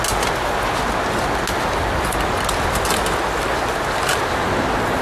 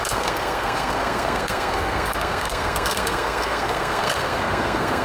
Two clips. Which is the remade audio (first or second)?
second